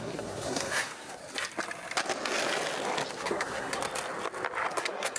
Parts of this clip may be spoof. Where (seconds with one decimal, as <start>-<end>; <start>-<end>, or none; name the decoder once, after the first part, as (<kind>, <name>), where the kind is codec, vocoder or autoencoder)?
0.0-1.2 (codec, SNAC); 3.1-3.8; 4.7-5.2